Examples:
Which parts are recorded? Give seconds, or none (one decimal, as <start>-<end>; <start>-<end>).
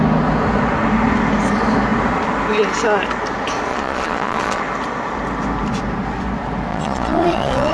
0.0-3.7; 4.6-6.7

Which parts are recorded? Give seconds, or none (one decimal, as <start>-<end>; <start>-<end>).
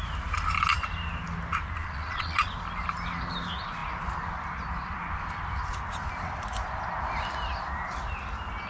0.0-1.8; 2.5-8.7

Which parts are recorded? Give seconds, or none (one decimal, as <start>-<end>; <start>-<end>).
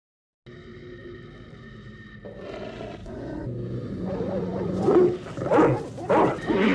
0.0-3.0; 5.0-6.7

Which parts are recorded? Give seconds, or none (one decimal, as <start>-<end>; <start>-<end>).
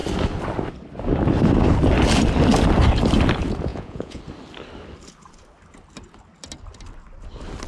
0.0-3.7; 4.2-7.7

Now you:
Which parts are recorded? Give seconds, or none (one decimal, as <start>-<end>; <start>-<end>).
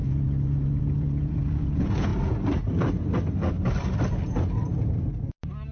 2.1-5.7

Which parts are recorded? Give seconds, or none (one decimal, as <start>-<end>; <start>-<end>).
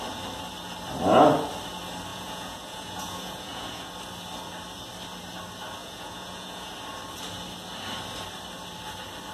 0.0-2.1; 3.9-5.8; 6.7-9.3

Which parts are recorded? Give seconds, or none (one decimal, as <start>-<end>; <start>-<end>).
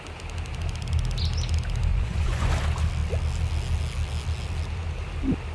0.0-1.9; 2.5-5.5